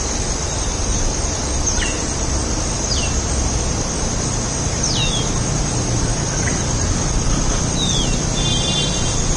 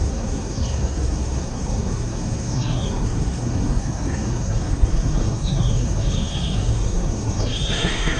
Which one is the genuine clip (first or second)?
first